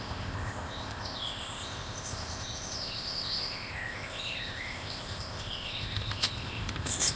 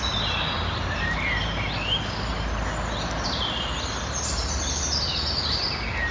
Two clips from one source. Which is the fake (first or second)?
first